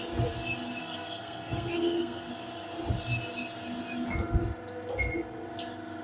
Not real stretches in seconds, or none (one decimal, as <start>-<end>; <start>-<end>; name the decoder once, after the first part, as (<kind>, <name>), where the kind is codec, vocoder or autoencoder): 0.8-2.3 (codec, SNAC)